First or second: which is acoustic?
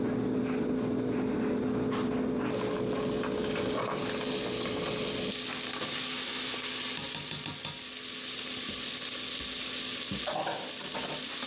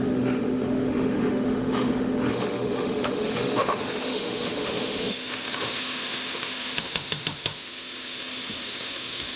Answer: first